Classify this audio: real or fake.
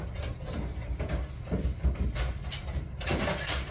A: real